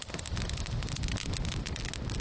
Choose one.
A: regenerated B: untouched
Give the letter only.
B